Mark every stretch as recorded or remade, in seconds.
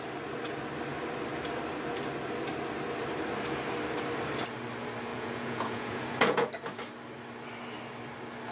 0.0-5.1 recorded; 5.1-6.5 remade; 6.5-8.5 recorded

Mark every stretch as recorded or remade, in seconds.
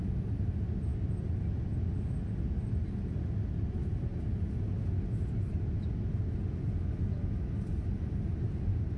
0.0-9.0 recorded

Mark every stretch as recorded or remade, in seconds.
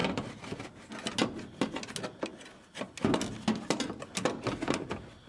0.0-5.3 recorded